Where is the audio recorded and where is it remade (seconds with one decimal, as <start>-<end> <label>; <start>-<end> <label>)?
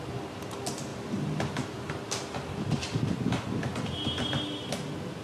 0.0-0.9 recorded; 0.9-1.9 remade; 1.9-5.2 recorded